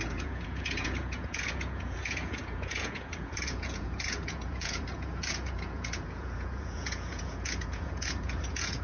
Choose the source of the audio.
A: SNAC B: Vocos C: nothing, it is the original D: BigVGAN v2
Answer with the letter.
B